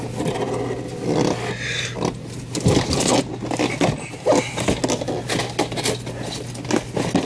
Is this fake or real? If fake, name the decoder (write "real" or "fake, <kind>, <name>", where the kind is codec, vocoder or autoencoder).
real